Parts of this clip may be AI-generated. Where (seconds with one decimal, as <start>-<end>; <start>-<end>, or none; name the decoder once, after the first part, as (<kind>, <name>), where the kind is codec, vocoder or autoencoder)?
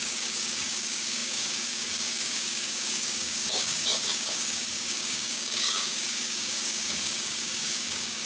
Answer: 0.0-8.3 (codec, DAC)